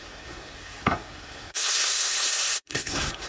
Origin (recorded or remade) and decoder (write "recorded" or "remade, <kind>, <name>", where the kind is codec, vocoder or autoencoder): remade, codec, SNAC